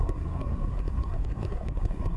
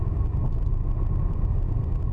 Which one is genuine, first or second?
second